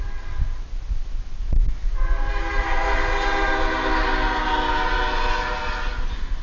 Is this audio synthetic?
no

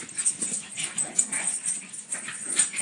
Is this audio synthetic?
yes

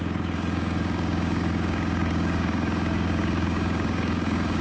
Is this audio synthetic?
yes